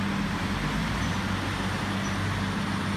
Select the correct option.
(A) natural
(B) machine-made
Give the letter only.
A